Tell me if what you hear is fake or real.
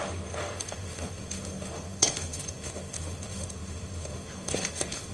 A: fake